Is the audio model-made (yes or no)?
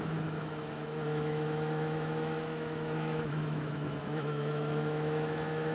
yes